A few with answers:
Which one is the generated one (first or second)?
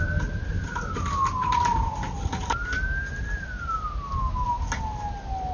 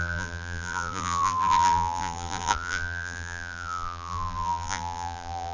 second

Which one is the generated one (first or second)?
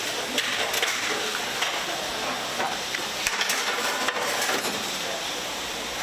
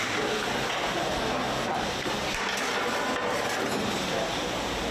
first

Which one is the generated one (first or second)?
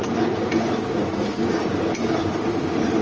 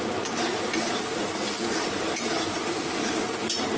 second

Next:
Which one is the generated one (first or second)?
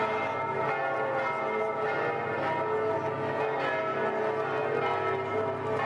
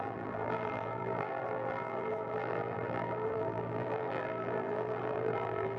second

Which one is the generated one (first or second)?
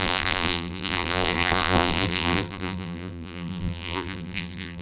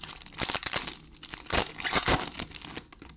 first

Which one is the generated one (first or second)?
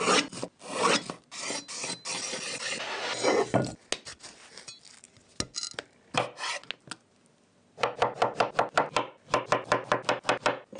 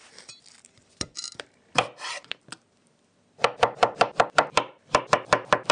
second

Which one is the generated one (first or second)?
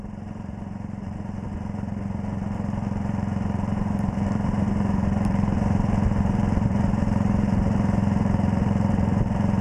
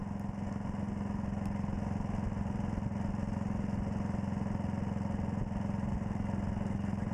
first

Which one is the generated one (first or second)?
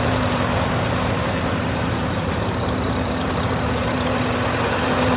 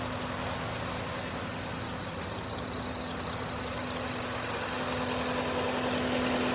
first